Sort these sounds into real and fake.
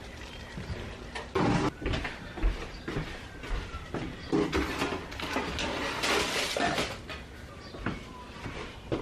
real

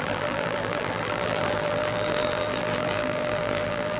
fake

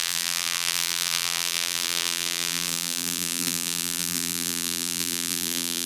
fake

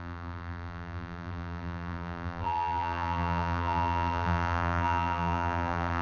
fake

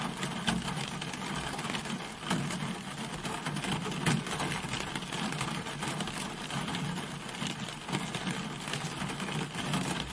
real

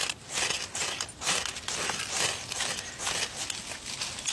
real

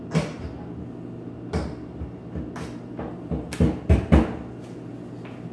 real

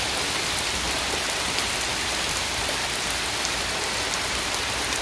fake